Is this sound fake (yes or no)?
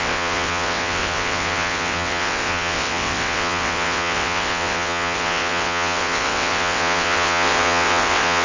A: yes